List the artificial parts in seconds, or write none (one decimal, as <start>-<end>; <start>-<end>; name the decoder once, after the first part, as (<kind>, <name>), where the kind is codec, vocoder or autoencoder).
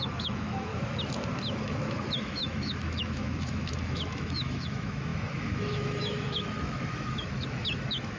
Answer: 0.0-0.7 (autoencoder, DAC-VAE); 1.6-8.2